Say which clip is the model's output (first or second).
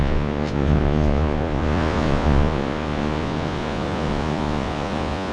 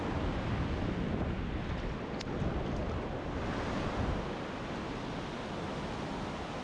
first